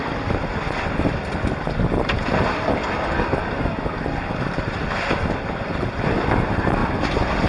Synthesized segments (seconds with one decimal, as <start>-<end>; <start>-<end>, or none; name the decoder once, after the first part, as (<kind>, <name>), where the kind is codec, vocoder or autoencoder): none